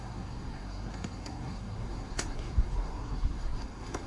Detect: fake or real fake